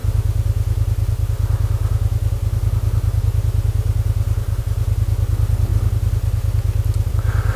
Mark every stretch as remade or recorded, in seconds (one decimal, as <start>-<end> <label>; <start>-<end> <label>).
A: 0.0-7.6 recorded

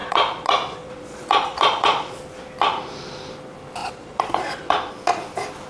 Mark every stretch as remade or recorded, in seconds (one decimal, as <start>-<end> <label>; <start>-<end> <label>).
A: 0.0-2.2 remade; 2.2-3.8 recorded; 3.8-4.9 remade; 4.9-5.7 recorded

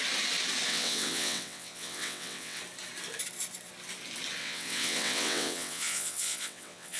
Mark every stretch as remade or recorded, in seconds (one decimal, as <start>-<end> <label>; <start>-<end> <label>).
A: 0.0-0.7 recorded; 0.7-2.6 remade; 2.6-4.4 recorded; 4.4-7.0 remade

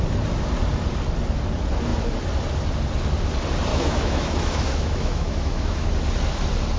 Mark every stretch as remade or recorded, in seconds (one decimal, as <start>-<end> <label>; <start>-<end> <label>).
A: 0.0-3.7 recorded; 3.7-5.9 remade; 5.9-6.8 recorded

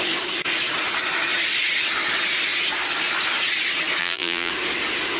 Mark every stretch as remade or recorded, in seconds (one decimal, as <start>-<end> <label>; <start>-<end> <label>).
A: 0.0-4.0 recorded; 4.0-4.5 remade; 4.5-5.2 recorded